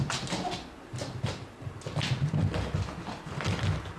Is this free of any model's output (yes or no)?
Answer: yes